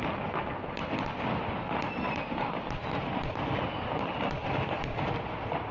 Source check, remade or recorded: remade